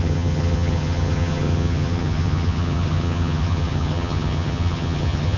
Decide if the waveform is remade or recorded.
remade